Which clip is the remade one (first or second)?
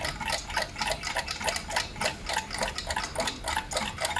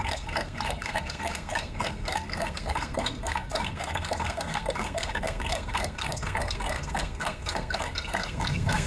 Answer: second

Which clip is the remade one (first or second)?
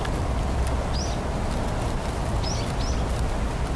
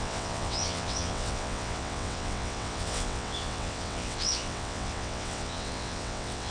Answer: second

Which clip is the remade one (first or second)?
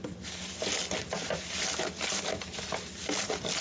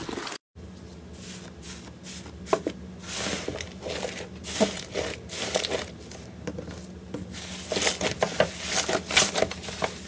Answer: first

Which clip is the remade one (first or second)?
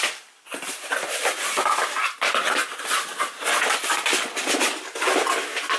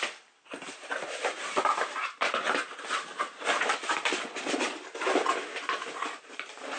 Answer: second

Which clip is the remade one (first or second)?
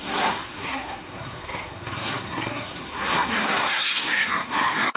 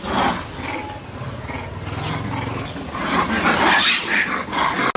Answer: first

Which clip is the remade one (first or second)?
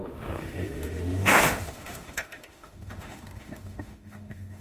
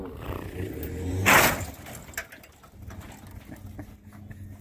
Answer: first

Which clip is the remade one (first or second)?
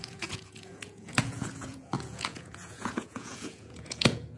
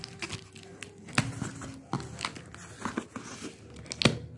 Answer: first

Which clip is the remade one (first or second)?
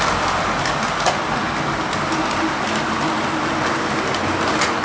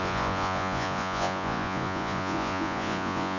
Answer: second